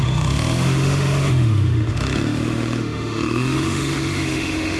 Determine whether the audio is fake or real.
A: fake